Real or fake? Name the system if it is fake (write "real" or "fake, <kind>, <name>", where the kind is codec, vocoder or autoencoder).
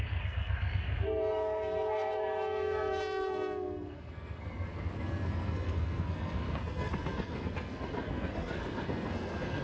fake, codec, SNAC